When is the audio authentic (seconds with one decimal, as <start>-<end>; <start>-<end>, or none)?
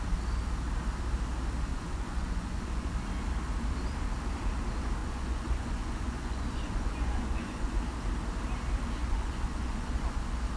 0.0-1.7; 2.9-5.0; 7.8-9.0; 10.2-10.6